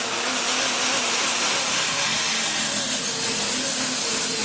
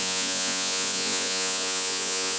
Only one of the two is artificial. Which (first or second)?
second